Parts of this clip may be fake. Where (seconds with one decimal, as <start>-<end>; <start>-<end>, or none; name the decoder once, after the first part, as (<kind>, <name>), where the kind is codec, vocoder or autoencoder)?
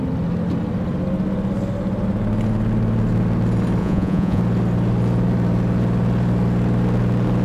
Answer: 3.8-4.4 (vocoder, Vocos)